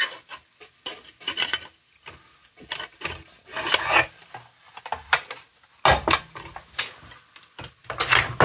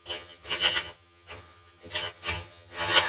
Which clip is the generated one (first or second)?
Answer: second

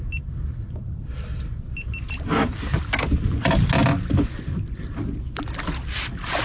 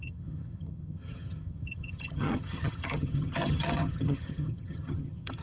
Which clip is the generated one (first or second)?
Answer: second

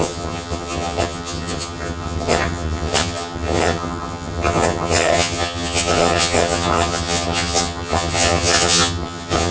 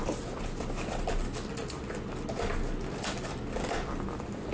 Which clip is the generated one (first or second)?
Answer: first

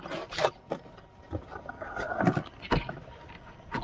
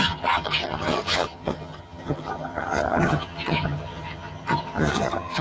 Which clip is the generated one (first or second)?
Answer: second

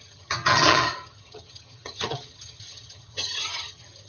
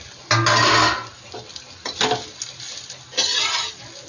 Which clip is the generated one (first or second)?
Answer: first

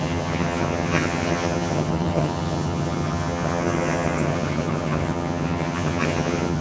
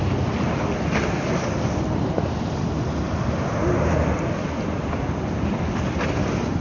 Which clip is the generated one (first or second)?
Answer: first